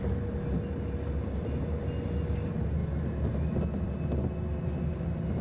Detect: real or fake real